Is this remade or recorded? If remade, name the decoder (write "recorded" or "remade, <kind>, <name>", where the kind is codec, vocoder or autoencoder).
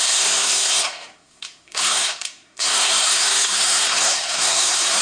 remade, codec, SNAC